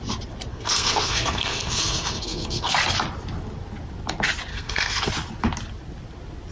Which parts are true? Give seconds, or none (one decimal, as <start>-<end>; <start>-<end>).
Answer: 0.0-0.5; 2.7-4.5; 5.1-6.5